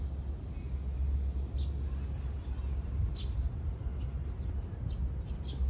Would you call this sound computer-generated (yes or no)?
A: no